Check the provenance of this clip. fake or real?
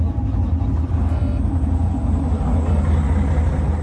real